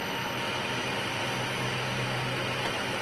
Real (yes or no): yes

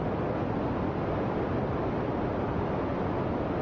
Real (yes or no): yes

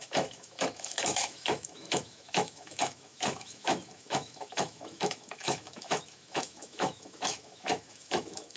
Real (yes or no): no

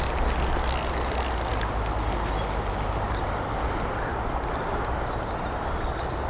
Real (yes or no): yes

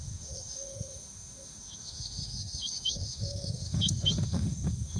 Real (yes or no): no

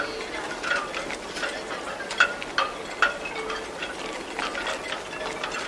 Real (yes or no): yes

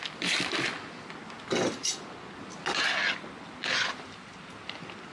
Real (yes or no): yes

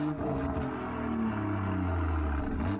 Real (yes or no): yes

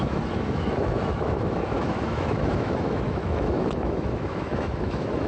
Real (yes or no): no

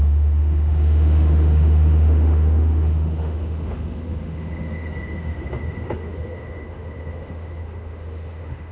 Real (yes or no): no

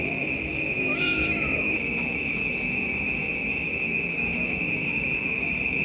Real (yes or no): no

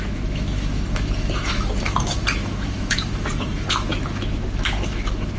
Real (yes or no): no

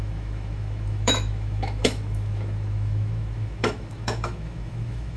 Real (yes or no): no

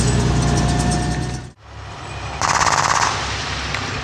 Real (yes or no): yes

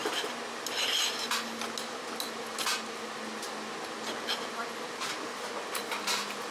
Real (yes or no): yes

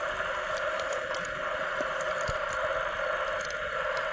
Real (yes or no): yes